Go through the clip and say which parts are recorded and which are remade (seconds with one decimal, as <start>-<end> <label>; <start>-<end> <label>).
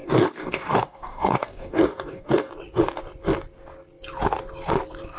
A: 0.0-2.5 remade; 2.5-5.2 recorded